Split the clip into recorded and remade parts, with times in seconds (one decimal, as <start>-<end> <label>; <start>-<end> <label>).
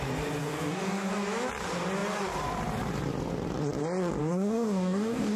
0.0-0.4 recorded; 0.4-1.1 remade; 1.1-4.2 recorded; 4.2-5.4 remade